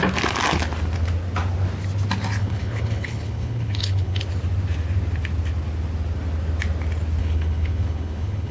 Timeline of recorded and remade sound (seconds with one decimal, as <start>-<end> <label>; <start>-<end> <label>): 0.0-2.4 recorded; 2.4-4.2 remade; 4.2-7.2 recorded; 7.2-8.5 remade